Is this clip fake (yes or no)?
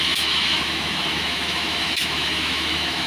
yes